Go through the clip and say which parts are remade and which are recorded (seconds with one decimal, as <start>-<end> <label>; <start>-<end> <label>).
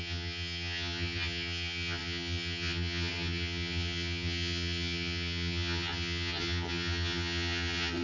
0.0-8.0 remade